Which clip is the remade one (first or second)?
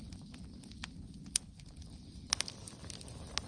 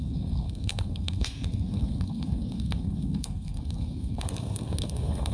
second